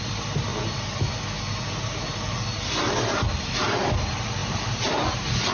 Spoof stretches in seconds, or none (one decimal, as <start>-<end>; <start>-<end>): 0.0-0.5; 3.4-5.5